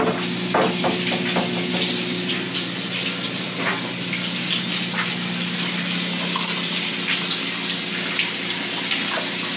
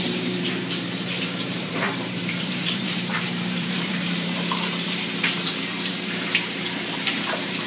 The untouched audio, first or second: first